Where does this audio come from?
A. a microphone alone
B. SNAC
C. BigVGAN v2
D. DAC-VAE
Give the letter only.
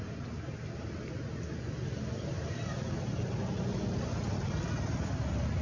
A